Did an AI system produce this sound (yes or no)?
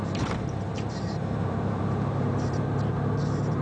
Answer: yes